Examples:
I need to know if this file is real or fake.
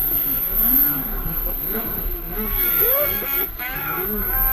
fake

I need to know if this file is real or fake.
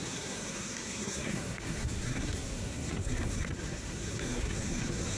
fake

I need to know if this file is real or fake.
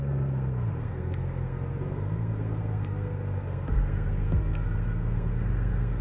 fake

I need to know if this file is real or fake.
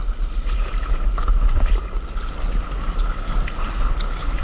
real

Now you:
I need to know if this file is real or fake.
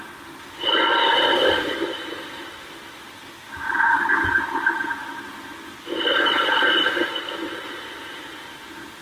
real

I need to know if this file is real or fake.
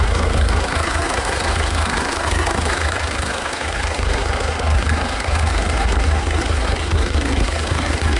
fake